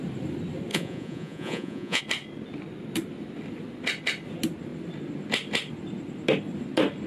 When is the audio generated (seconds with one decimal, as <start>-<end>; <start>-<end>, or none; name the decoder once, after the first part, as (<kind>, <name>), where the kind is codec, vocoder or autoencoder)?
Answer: 0.7-2.0 (vocoder, Vocos)